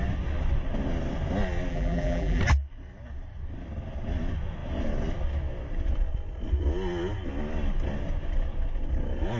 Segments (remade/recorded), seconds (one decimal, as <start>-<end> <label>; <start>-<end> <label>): 0.0-1.7 recorded; 1.7-2.4 remade; 2.4-9.4 recorded